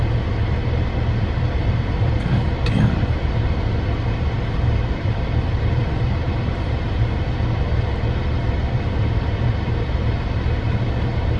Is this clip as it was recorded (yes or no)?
no